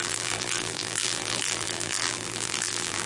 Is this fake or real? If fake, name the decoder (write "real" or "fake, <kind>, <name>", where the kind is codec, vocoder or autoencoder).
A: fake, vocoder, BigVGAN v2